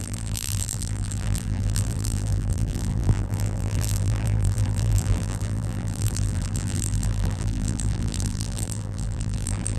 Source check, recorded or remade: remade